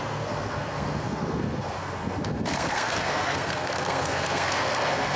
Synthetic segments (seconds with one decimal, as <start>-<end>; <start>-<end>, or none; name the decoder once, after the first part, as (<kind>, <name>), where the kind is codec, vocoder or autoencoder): 0.0-5.2 (codec, SNAC)